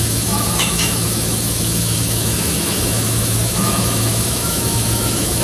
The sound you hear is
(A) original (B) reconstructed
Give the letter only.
B